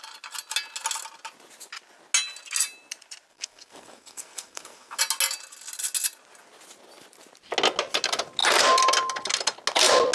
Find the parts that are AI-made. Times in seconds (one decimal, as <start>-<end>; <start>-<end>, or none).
3.3-5.0